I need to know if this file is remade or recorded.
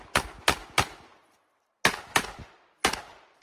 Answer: recorded